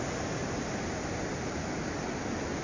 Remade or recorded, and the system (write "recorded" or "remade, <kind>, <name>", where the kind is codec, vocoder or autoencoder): recorded